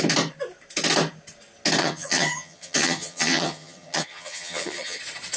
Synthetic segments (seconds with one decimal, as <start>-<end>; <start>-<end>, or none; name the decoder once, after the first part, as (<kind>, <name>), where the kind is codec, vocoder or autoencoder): 1.8-5.0 (vocoder, HiFi-GAN)